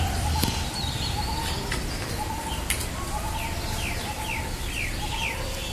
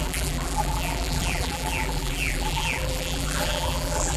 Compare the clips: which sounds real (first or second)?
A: first